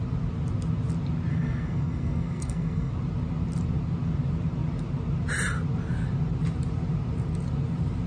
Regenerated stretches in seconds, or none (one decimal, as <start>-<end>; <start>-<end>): 1.3-2.9